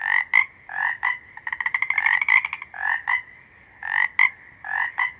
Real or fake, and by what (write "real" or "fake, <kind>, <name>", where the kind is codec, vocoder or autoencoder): real